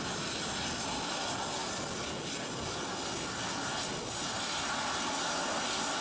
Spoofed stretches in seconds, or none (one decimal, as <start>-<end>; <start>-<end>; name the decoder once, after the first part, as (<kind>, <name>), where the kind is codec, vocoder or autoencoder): none